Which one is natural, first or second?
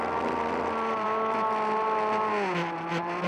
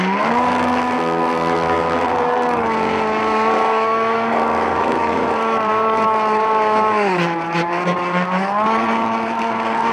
first